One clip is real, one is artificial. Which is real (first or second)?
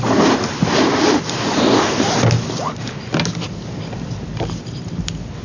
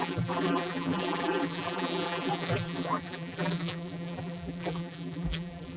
first